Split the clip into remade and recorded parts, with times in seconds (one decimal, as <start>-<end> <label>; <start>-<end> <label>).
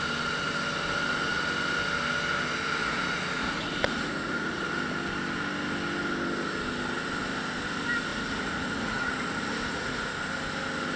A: 0.0-2.8 recorded; 2.8-4.7 remade; 4.7-8.1 recorded; 8.1-10.1 remade; 10.1-11.0 recorded